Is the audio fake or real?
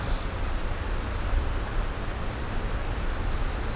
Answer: real